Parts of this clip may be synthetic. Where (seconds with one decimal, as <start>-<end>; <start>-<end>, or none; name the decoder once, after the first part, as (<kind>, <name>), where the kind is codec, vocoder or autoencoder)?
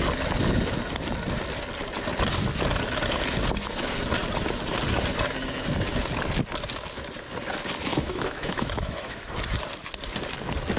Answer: 7.9-9.3 (autoencoder, DAC-VAE)